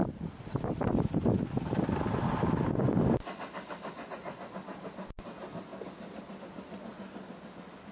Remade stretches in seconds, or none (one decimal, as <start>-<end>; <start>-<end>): none